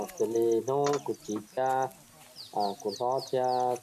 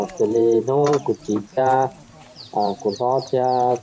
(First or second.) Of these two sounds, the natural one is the first